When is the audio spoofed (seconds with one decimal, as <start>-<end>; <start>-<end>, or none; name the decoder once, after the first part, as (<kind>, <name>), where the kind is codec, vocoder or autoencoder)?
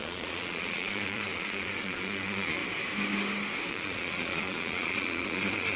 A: 0.0-2.6 (vocoder, Vocos); 3.7-5.8